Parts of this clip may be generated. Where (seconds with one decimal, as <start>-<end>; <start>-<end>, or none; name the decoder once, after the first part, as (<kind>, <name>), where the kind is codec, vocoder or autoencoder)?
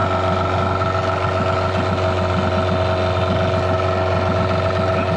none